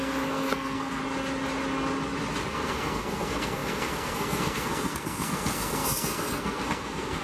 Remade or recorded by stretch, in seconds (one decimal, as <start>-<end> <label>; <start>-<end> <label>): 0.0-1.0 remade; 1.0-2.5 recorded; 2.5-7.2 remade